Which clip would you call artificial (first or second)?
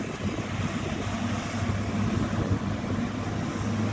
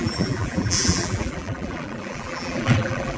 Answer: second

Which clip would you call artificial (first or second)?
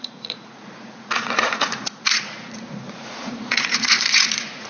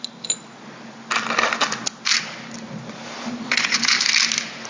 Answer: first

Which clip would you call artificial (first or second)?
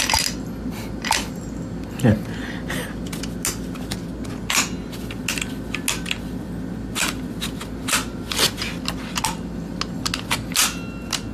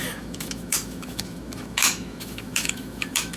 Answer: second